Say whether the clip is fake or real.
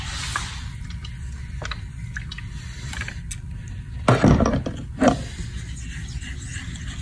real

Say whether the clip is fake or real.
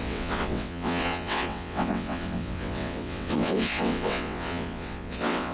fake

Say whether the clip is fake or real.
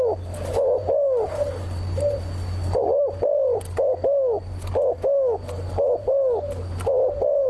real